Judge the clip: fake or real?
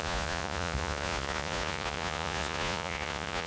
fake